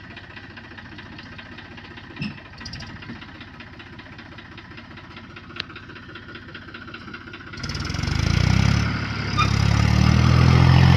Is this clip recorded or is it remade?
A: recorded